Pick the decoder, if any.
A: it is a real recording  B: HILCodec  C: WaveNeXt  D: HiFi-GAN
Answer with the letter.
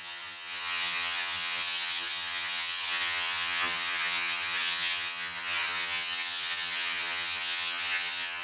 D